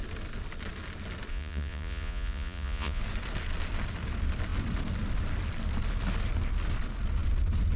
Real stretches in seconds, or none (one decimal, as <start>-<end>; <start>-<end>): 0.0-1.3; 3.0-7.8